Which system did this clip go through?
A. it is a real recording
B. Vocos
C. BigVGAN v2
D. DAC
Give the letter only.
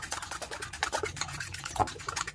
B